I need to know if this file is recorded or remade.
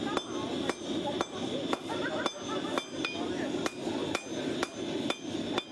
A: recorded